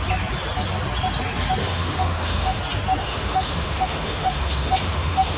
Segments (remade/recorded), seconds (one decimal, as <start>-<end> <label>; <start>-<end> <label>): 0.0-1.6 recorded; 1.6-2.6 remade; 2.6-3.0 recorded; 3.0-5.4 remade